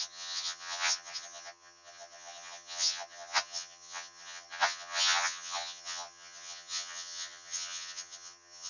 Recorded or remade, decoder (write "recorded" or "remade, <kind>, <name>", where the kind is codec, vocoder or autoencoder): remade, vocoder, HiFi-GAN